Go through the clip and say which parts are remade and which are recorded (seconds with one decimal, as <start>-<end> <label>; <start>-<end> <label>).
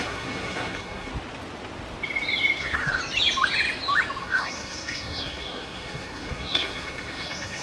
0.0-1.1 remade; 1.1-2.6 recorded; 2.6-3.0 remade; 3.0-4.2 recorded; 4.2-7.6 remade